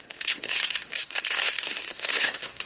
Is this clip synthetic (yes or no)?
yes